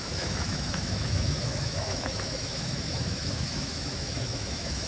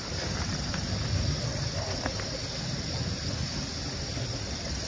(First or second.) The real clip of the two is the second